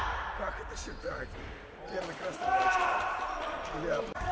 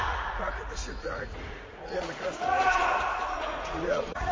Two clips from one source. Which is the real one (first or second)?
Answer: first